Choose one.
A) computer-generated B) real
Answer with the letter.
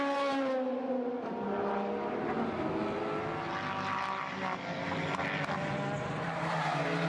B